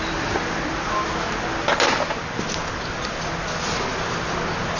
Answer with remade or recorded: recorded